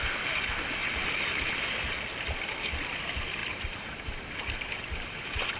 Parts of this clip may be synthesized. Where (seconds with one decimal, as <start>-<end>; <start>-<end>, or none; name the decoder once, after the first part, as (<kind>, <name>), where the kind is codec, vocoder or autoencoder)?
0.8-1.7 (vocoder, BigVGAN v2); 3.4-4.2